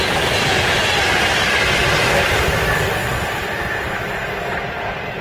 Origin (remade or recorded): recorded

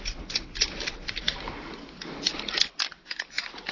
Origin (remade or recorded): recorded